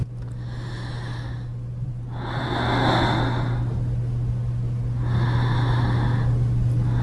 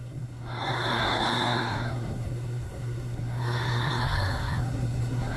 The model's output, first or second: second